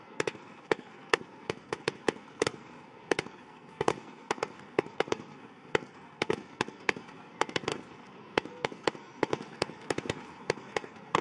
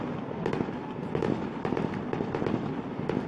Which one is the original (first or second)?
second